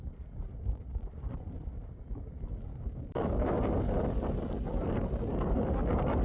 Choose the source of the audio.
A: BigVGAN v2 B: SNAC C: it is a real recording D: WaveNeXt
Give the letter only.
C